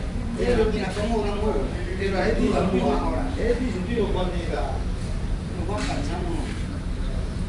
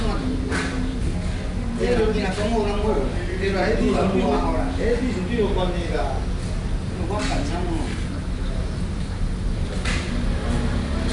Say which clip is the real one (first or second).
second